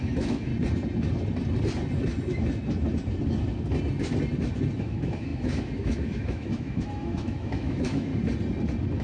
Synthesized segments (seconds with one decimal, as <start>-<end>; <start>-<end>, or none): 0.0-0.5; 4.8-8.1